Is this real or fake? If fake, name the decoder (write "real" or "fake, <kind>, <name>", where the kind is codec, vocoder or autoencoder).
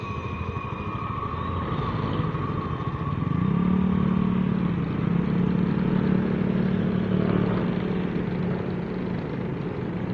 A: real